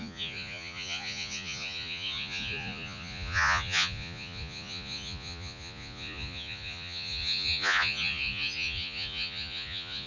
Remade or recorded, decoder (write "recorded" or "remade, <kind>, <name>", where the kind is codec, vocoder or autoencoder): remade, vocoder, Vocos